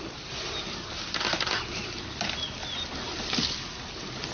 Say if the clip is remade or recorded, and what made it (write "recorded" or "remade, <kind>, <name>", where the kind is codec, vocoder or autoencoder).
recorded